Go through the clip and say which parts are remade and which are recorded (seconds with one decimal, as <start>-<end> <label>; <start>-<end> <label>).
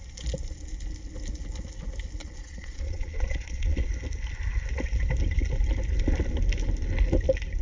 0.0-2.2 recorded; 2.2-3.9 remade; 3.9-7.6 recorded